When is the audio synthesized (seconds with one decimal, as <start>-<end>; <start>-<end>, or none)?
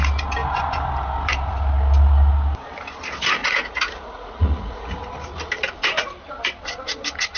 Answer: 3.4-5.1